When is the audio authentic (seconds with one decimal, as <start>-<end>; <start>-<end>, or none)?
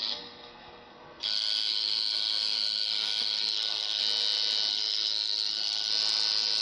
4.0-4.7; 5.9-6.6